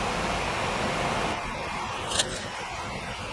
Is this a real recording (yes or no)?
yes